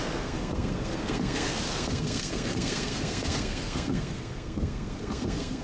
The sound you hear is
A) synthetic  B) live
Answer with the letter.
A